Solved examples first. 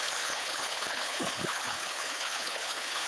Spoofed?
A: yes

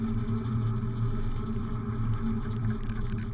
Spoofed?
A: no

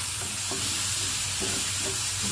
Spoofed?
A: no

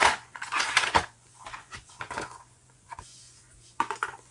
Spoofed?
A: yes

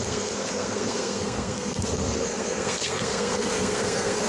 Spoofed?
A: yes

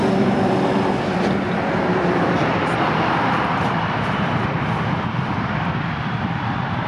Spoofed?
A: yes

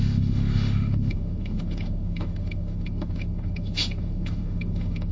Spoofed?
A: yes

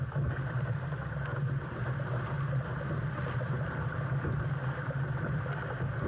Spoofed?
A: no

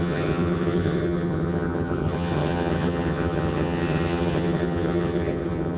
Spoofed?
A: yes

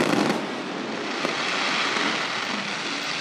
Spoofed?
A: no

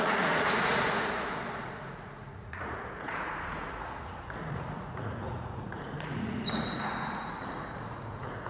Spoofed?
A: yes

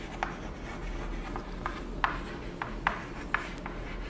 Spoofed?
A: no